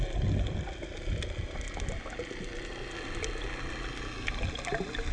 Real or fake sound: real